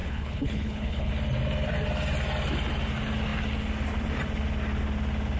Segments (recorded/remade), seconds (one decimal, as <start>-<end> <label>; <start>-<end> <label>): 0.0-1.1 remade; 1.1-5.4 recorded